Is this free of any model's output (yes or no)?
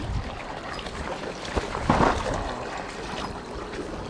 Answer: yes